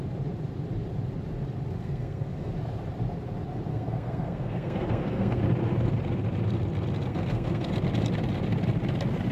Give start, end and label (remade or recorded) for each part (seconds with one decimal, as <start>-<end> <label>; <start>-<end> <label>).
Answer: 0.0-1.8 recorded; 1.8-2.5 remade; 2.5-3.7 recorded; 3.7-5.4 remade; 5.4-7.1 recorded; 7.1-7.7 remade; 7.7-9.3 recorded